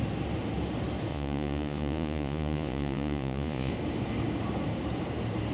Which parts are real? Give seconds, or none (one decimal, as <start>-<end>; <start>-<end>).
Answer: 0.0-1.1; 3.7-5.5